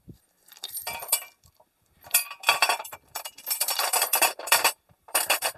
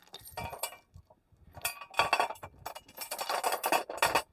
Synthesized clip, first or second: first